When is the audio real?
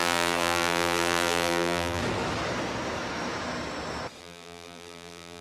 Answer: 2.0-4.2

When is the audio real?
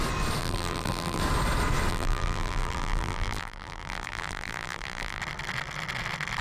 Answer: 0.0-0.4; 1.2-1.9; 5.2-6.4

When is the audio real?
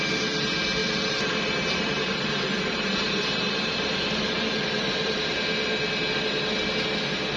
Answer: 0.0-0.8; 5.2-7.4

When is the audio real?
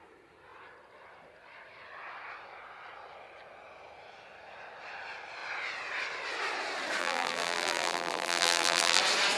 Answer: 0.0-7.0; 9.0-9.4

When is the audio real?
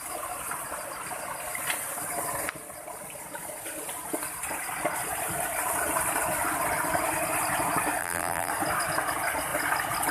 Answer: 0.0-8.0; 8.5-10.1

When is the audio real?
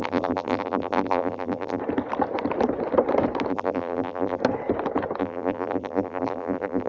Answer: 1.8-3.5; 4.4-5.2